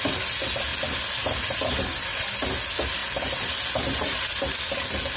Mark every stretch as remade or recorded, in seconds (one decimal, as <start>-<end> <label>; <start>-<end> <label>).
0.0-5.2 recorded